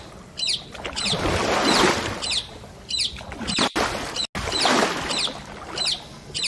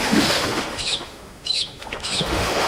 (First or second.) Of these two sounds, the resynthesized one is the second